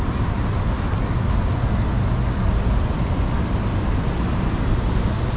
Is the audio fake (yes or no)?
no